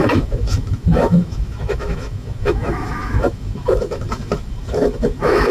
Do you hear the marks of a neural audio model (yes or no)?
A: yes